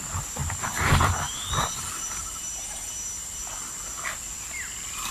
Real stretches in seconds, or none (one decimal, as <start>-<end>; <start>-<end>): 0.0-5.1